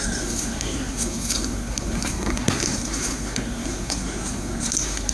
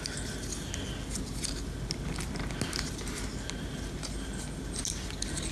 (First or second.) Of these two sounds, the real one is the second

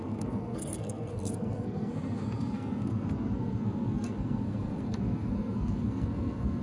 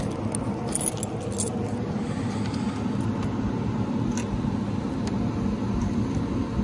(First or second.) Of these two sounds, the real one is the second